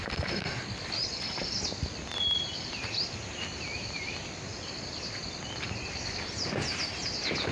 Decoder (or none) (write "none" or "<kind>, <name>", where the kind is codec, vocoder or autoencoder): none